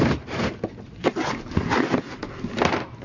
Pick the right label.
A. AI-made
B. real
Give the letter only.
B